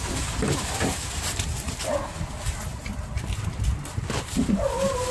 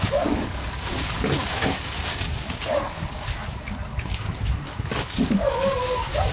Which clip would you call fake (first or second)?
second